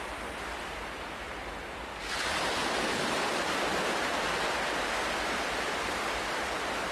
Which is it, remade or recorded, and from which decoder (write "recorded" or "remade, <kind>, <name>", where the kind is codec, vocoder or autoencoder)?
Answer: recorded